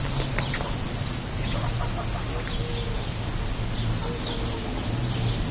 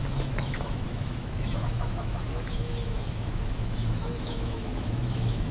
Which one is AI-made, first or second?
second